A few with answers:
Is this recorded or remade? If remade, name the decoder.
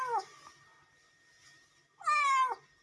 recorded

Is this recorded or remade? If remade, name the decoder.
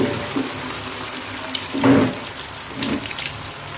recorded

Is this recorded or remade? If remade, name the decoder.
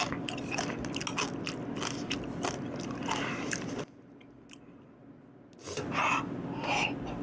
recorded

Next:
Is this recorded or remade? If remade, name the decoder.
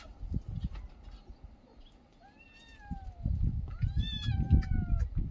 recorded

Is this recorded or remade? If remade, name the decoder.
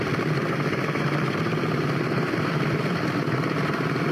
remade, vocoder, BigVGAN v2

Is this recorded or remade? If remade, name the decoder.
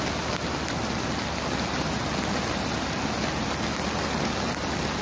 recorded